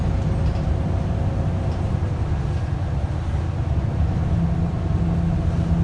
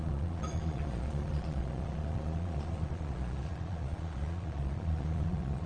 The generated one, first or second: second